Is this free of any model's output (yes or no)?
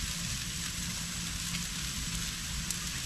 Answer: yes